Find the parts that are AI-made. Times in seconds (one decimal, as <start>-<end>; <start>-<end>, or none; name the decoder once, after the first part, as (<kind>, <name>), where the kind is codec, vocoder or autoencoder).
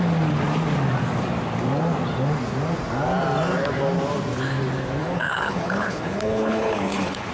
5.0-7.3 (codec, HILCodec)